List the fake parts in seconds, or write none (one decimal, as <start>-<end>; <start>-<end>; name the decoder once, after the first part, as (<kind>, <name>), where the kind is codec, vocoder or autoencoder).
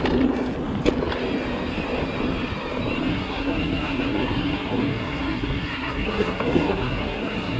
3.1-7.6 (codec, SNAC)